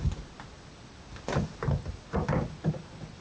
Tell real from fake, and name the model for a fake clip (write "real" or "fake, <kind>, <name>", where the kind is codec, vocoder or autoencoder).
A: real